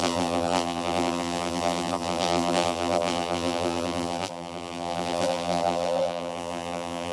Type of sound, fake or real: fake